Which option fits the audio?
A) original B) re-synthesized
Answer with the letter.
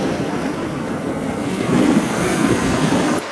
B